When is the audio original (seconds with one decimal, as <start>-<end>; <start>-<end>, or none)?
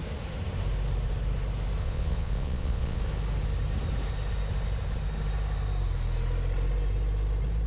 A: 0.0-1.8; 3.0-7.7